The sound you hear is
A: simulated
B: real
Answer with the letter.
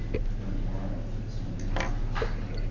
B